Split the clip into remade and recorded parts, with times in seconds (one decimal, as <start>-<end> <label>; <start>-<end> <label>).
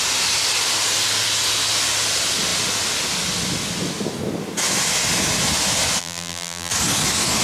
0.0-6.0 recorded; 6.0-6.7 remade; 6.7-7.4 recorded